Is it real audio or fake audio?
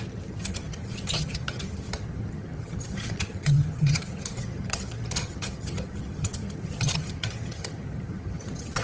fake